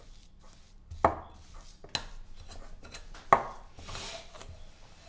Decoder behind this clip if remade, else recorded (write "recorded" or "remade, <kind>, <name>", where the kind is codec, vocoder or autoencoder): recorded